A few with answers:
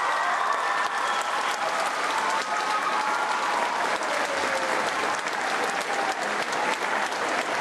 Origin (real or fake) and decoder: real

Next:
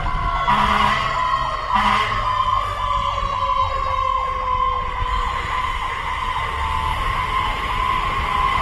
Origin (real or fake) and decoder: real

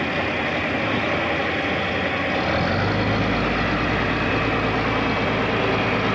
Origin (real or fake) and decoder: real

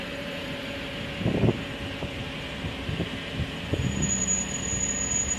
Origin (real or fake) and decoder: fake, vocoder, BigVGAN v2